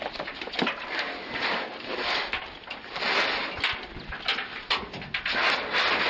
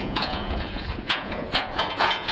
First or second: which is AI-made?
second